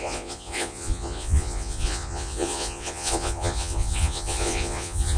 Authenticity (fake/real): fake